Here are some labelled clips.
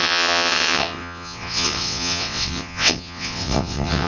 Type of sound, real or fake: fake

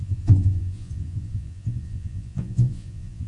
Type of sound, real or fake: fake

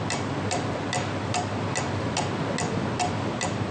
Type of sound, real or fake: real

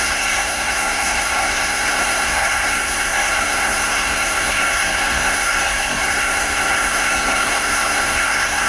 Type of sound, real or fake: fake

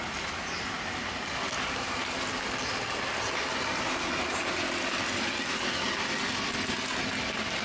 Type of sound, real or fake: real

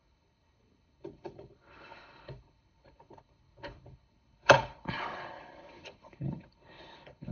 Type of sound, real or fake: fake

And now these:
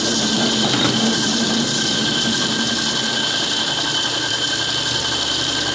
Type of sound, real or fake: fake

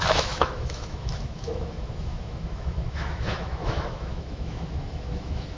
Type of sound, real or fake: fake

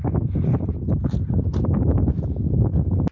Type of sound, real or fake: real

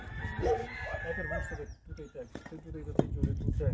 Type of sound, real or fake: real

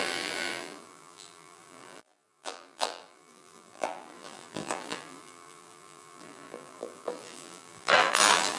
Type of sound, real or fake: fake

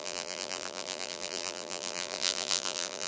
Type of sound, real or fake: fake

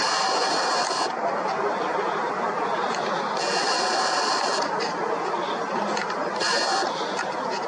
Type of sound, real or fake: real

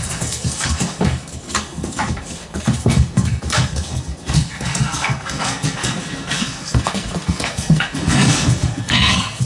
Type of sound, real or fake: fake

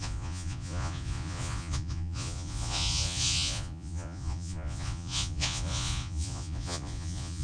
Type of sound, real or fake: fake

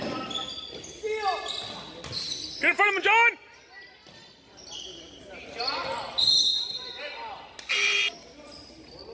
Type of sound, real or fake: real